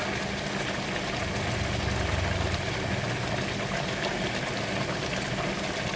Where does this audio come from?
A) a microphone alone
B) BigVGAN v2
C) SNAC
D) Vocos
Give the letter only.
A